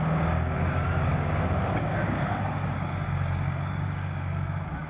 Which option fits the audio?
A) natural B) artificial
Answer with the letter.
B